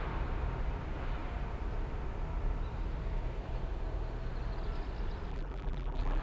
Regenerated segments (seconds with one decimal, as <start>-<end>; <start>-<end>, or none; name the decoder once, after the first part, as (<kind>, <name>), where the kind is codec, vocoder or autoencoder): 5.3-6.2 (vocoder, BigVGAN v2)